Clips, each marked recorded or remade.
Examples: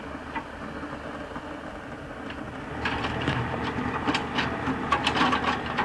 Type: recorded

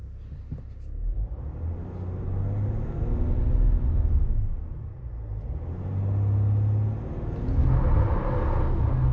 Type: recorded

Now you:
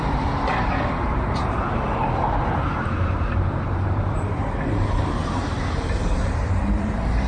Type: remade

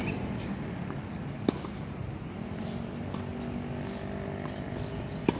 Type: recorded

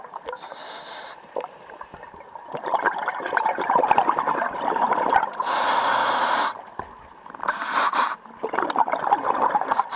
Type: recorded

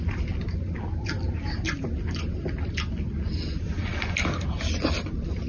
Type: recorded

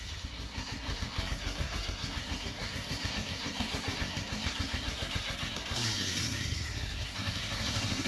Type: remade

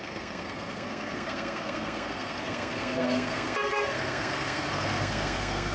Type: remade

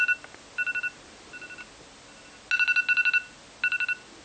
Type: recorded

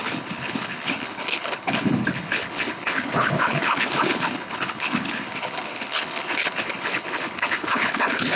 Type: remade